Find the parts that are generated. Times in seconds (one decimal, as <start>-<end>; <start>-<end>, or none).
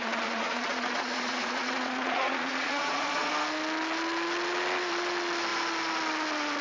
0.0-3.3